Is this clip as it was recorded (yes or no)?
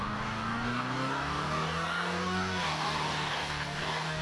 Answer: no